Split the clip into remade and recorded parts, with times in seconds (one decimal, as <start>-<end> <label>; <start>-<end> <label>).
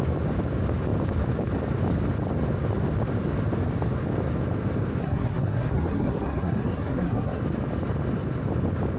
0.0-5.0 recorded; 5.0-7.4 remade; 7.4-9.0 recorded